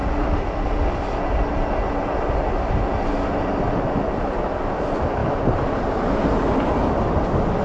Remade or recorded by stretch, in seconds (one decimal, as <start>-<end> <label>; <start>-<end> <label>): 0.0-7.6 recorded